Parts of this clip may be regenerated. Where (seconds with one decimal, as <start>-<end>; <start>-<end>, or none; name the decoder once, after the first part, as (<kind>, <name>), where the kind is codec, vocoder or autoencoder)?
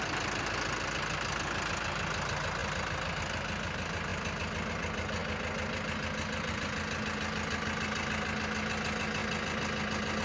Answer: none